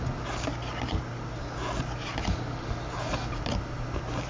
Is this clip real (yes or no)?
yes